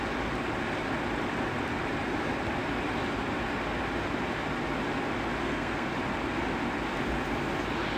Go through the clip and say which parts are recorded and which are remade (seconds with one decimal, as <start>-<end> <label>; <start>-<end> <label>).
0.0-5.4 recorded; 5.4-5.9 remade; 5.9-8.0 recorded